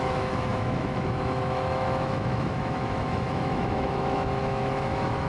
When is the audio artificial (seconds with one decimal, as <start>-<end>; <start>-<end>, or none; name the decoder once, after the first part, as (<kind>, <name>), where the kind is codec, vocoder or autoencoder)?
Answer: 0.0-5.3 (autoencoder, DAC-VAE)